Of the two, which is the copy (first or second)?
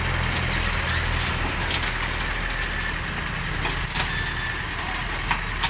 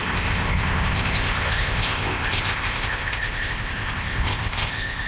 second